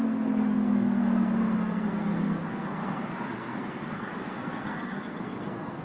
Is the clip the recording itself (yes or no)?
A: no